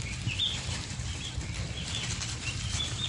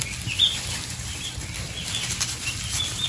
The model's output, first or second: first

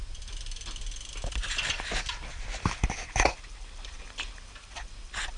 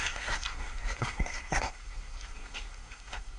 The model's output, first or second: second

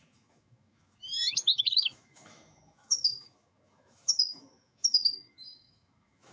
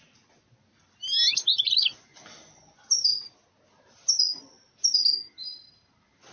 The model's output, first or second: first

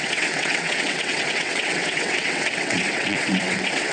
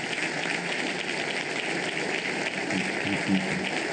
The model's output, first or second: first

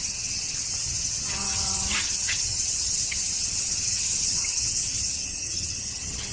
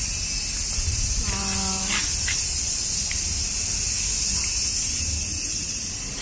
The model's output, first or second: first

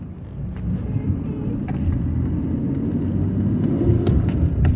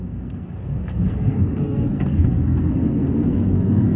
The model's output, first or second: second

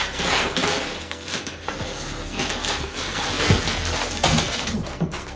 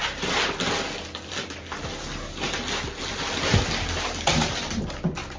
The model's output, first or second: first